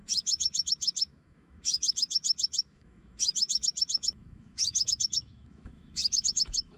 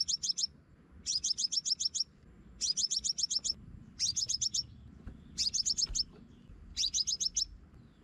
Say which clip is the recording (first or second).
second